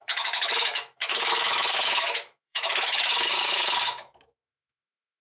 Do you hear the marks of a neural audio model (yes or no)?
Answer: yes